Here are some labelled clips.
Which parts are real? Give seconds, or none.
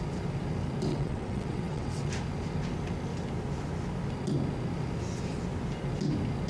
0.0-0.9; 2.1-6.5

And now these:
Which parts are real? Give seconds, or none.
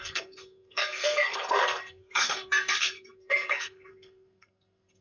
none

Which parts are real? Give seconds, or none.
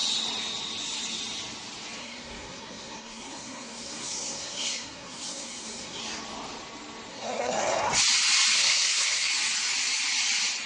0.0-2.0; 6.0-7.1; 7.9-8.5; 9.3-10.7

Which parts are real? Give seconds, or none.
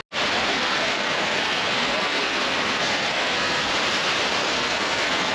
0.0-0.5; 3.7-4.4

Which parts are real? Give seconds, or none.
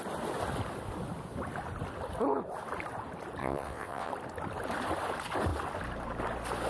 0.0-3.4; 4.1-6.7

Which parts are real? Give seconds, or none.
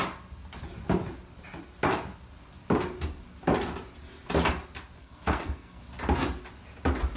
0.0-5.0; 5.8-7.2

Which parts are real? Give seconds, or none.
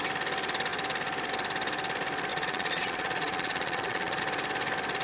0.0-2.3; 4.2-5.0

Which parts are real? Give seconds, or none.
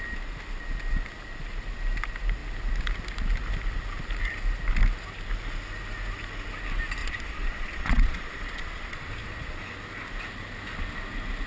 0.0-7.0; 9.6-11.5